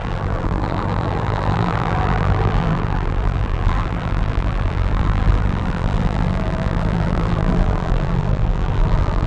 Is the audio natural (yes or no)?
no